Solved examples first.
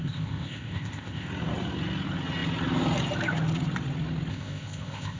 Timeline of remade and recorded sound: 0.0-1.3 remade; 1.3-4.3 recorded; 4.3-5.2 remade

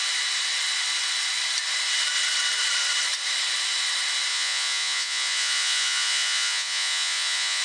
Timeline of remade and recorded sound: 0.0-4.3 recorded; 4.3-7.6 remade

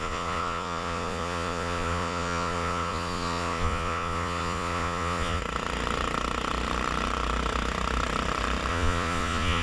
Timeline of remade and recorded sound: 0.0-5.4 remade; 5.4-8.7 recorded; 8.7-9.6 remade

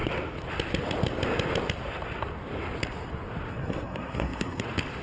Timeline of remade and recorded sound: 0.0-3.5 recorded; 3.5-4.6 remade; 4.6-5.0 recorded